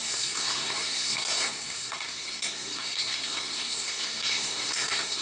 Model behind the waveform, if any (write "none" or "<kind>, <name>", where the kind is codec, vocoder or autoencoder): codec, SNAC